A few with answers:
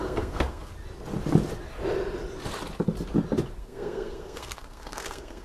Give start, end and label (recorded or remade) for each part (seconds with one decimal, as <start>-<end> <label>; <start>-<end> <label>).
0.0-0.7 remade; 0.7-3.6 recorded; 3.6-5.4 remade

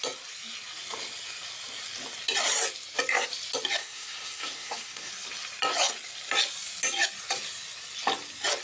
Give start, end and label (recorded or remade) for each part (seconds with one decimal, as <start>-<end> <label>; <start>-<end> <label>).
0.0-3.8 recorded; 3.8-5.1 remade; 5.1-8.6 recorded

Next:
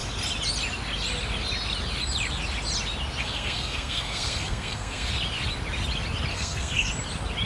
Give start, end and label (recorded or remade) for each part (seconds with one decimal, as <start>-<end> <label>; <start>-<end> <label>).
0.0-3.2 recorded; 3.2-5.1 remade; 5.1-6.3 recorded; 6.3-6.9 remade; 6.9-7.5 recorded

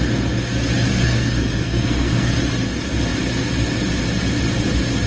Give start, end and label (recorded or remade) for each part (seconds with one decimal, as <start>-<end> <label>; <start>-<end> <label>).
0.0-1.0 recorded; 1.0-2.3 remade; 2.3-5.1 recorded

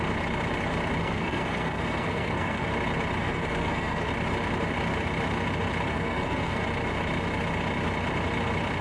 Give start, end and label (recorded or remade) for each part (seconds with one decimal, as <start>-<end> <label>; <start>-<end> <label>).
0.0-1.0 recorded; 1.0-2.7 remade; 2.7-3.2 recorded; 3.2-4.1 remade; 4.1-5.9 recorded; 5.9-6.6 remade; 6.6-8.8 recorded

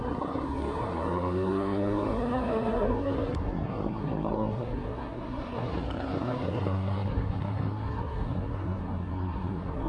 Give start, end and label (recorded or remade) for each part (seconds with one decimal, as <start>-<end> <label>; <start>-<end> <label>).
0.0-9.9 remade